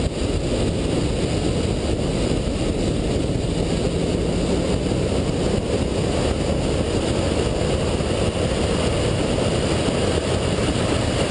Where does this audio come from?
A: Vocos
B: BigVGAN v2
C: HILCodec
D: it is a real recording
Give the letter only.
D